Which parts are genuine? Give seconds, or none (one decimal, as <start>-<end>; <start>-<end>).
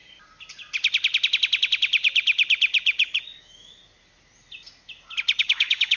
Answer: 0.0-3.4; 3.8-5.4